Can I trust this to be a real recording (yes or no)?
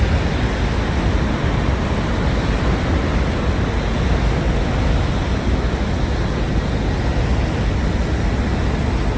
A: yes